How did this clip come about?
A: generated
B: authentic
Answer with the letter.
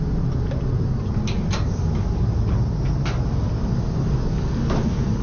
B